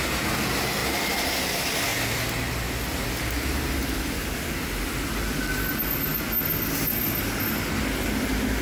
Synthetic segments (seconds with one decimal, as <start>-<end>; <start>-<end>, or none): 0.8-1.4

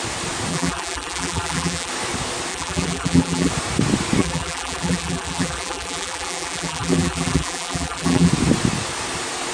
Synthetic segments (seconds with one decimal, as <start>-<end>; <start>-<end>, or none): 0.5-1.9; 2.5-3.5; 4.2-8.3

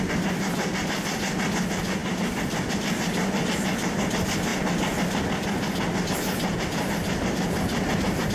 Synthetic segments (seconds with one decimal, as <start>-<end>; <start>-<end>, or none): none

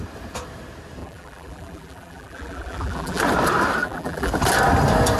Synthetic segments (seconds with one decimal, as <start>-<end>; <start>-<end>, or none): 1.0-3.2; 3.8-4.3